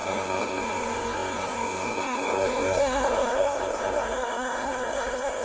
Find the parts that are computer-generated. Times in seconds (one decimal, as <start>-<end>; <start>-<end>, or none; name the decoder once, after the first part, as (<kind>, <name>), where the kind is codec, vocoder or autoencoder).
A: 0.0-5.4 (codec, SNAC)